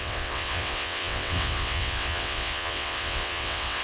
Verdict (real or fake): fake